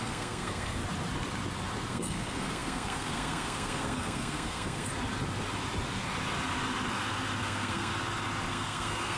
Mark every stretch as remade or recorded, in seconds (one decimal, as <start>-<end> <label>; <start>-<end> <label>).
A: 0.0-0.8 remade; 0.8-1.9 recorded; 1.9-4.9 remade; 4.9-7.4 recorded; 7.4-7.9 remade; 7.9-8.5 recorded; 8.5-9.2 remade